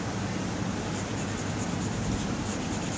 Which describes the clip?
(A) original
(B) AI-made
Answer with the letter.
B